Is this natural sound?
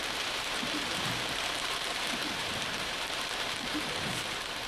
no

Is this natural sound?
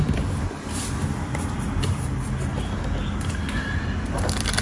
yes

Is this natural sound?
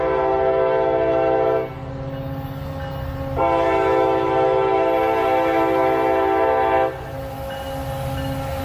yes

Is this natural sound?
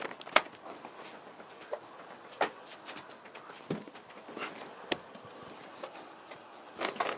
yes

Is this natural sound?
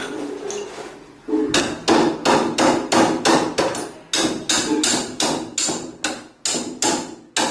yes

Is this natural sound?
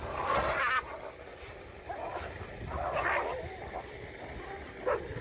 yes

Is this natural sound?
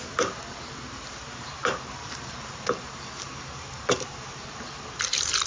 no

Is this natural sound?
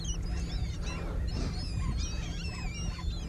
yes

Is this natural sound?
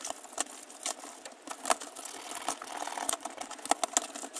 yes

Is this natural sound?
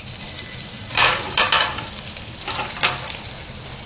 no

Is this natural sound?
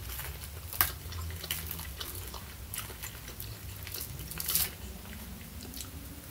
yes